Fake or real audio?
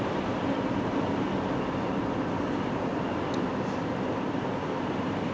real